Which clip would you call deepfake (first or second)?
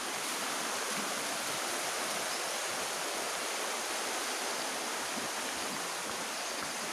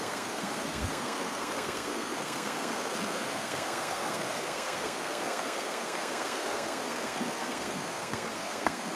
second